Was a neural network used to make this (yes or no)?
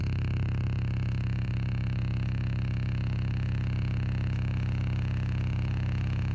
yes